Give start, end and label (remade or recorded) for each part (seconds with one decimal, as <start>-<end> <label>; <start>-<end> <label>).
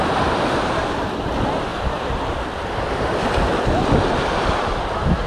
0.0-5.3 recorded